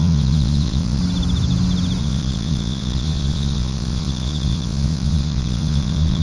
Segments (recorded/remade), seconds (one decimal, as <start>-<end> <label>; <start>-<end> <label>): 0.0-1.0 remade; 1.0-2.0 recorded; 2.0-6.2 remade